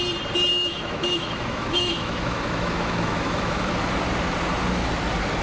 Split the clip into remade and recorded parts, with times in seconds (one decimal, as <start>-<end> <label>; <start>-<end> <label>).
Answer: 0.0-0.5 recorded; 0.5-3.7 remade; 3.7-5.4 recorded